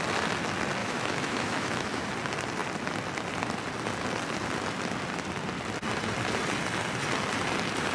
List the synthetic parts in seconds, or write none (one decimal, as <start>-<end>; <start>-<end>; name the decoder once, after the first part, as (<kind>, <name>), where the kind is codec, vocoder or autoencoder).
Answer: 0.8-2.1 (autoencoder, DAC-VAE)